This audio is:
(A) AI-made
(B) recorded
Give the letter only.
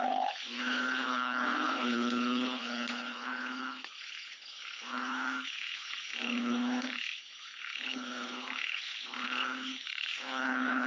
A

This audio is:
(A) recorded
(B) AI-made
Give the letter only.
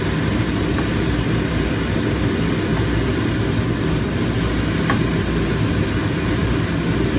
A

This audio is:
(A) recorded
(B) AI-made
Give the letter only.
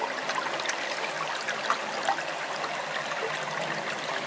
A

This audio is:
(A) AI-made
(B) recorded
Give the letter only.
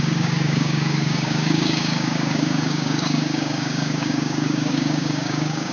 A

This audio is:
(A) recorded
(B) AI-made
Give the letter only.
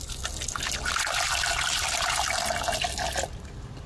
A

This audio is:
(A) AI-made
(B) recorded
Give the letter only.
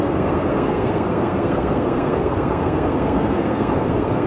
A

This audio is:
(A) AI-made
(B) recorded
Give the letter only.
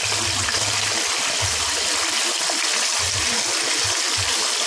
B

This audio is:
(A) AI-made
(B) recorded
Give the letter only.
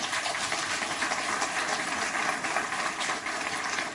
B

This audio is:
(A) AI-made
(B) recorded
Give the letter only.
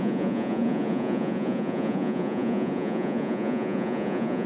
A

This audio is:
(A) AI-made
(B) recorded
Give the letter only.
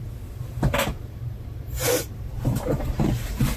A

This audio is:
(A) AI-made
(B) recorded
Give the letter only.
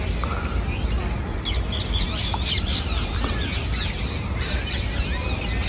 B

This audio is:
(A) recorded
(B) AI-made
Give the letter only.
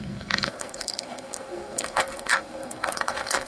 B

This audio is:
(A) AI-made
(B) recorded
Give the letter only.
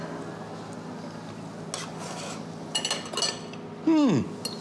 B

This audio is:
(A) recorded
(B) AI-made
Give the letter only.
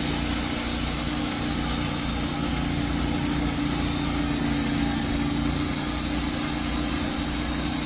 A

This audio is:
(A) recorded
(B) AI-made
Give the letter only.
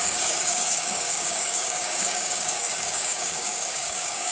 B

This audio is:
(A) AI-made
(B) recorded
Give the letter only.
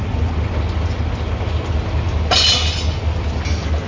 B